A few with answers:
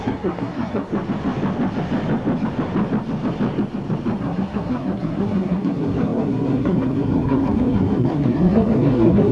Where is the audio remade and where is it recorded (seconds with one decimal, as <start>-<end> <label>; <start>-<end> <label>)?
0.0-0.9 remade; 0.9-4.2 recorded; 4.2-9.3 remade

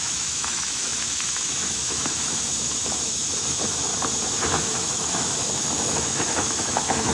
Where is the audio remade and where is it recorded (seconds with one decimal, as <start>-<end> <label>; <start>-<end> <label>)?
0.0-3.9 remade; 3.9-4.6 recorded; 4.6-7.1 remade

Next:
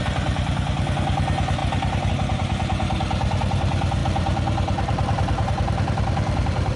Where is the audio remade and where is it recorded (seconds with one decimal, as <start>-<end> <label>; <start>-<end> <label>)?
0.0-4.0 recorded; 4.0-6.8 remade

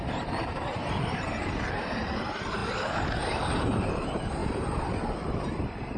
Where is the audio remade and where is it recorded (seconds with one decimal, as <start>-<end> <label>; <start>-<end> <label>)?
0.0-0.8 remade; 0.8-1.7 recorded; 1.7-2.6 remade; 2.6-3.6 recorded; 3.6-4.4 remade; 4.4-5.6 recorded; 5.6-6.0 remade

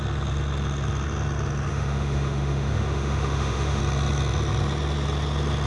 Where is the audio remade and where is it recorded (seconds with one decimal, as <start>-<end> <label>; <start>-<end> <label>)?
0.0-1.7 recorded; 1.7-3.8 remade; 3.8-5.7 recorded

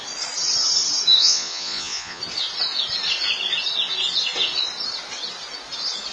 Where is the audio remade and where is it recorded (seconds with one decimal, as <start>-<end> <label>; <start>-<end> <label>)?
0.0-1.2 recorded; 1.2-2.2 remade; 2.2-6.1 recorded

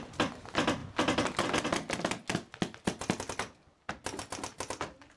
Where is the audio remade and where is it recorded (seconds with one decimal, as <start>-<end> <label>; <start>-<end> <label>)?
0.0-5.2 recorded